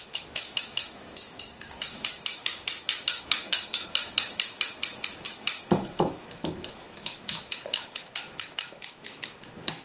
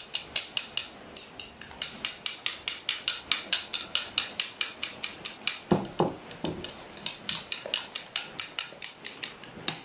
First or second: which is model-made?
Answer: first